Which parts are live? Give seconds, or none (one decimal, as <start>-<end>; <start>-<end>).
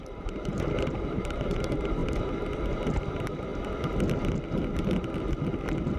2.0-3.1; 3.5-6.0